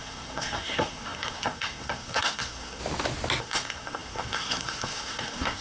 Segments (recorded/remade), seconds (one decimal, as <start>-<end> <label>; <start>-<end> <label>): 0.0-2.8 remade; 2.8-3.4 recorded; 3.4-5.6 remade

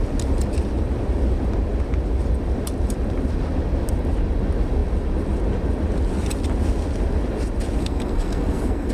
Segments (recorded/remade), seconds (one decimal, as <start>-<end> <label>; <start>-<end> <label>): 0.0-7.8 recorded; 7.8-8.9 remade

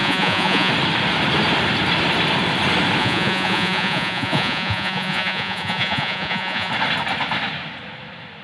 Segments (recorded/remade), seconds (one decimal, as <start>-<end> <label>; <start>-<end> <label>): 0.0-0.7 remade; 0.7-3.0 recorded; 3.0-6.7 remade; 6.7-8.4 recorded

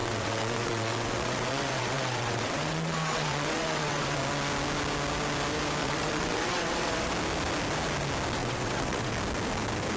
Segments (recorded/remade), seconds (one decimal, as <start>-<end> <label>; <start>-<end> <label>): 0.0-4.2 remade; 4.2-5.8 recorded; 5.8-7.1 remade; 7.1-8.4 recorded; 8.4-9.1 remade; 9.1-10.0 recorded